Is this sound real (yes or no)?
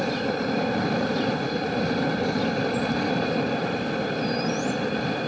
yes